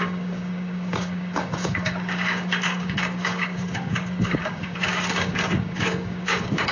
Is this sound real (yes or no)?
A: no